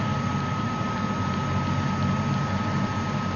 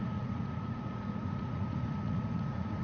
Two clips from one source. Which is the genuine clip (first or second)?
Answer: first